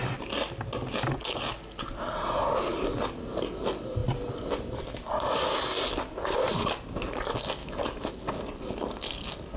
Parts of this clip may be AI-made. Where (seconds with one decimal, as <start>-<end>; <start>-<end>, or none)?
7.6-8.1